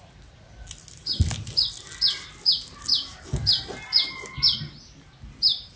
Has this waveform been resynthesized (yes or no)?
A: no